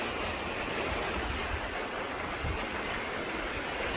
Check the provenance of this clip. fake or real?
real